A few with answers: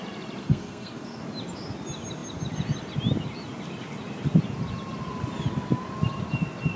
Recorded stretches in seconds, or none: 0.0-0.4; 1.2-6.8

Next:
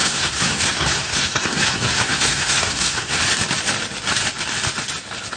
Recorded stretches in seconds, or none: 3.2-5.4

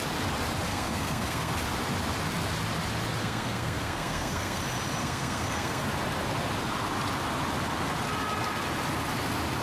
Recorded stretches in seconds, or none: 0.0-0.7; 1.5-3.2; 4.6-5.0; 5.8-9.6

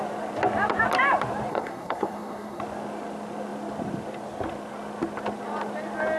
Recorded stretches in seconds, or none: 0.0-1.5; 2.6-6.2

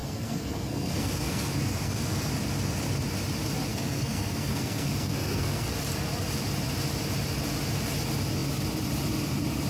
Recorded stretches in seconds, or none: 2.3-3.7; 5.7-9.7

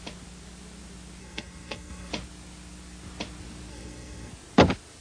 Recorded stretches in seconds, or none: 0.0-1.2; 2.1-3.7; 4.3-5.0